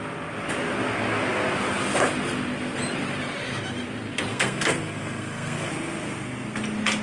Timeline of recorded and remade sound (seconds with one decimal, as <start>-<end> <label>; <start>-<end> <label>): 0.0-4.3 recorded; 4.3-5.7 remade; 5.7-7.0 recorded